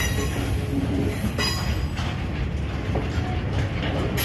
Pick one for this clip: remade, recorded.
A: recorded